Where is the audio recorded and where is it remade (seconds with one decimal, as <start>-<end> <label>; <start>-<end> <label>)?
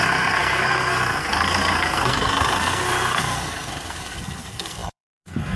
0.0-5.6 remade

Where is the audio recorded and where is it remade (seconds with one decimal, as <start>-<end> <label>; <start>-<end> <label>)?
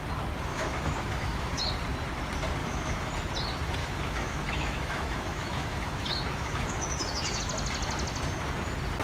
0.0-0.5 recorded; 0.5-1.6 remade; 1.6-2.6 recorded; 2.6-3.1 remade; 3.1-3.8 recorded; 3.8-7.4 remade; 7.4-9.0 recorded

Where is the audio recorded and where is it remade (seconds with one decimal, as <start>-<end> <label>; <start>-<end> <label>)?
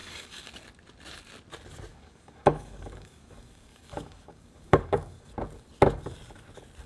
0.0-0.5 remade; 0.5-1.9 recorded; 1.9-5.3 remade; 5.3-6.9 recorded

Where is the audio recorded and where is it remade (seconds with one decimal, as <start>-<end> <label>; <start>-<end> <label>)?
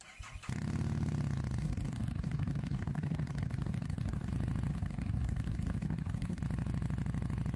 0.0-1.6 recorded; 1.6-4.3 remade; 4.3-4.7 recorded; 4.7-6.4 remade; 6.4-7.6 recorded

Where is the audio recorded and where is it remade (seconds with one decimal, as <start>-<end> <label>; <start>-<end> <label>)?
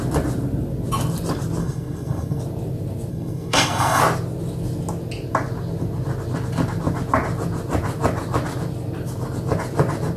0.0-1.6 recorded; 1.6-2.4 remade; 2.4-3.1 recorded; 3.1-4.0 remade; 4.0-10.2 recorded